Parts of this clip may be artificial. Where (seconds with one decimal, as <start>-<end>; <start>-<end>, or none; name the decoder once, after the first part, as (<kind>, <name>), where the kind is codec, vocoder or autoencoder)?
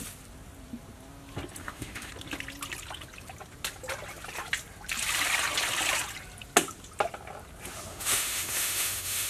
1.6-2.1 (autoencoder, DAC-VAE); 7.9-9.3